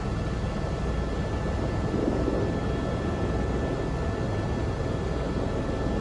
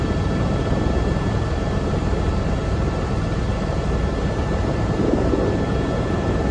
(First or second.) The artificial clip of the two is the second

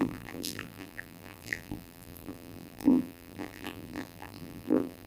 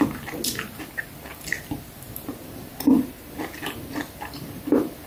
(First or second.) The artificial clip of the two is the first